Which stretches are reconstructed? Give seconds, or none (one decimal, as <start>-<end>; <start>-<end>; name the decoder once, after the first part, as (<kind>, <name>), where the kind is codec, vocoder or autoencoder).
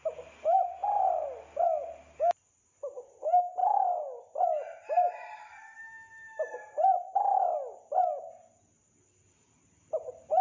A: none